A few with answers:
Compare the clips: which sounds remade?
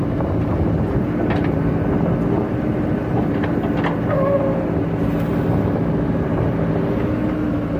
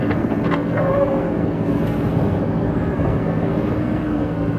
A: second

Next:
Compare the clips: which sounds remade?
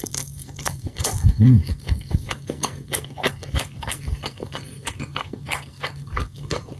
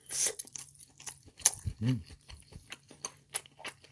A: first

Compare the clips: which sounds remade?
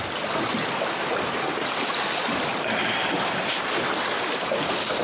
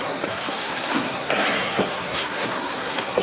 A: second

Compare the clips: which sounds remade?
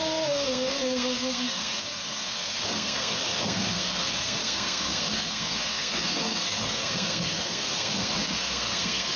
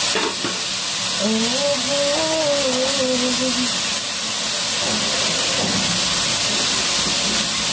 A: first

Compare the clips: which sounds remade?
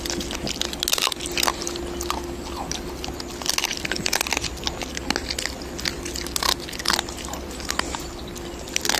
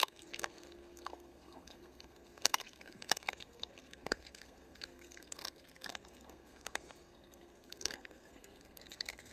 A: second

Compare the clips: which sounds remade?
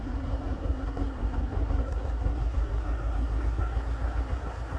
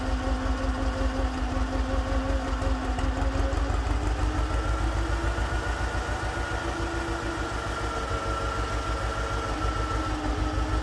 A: first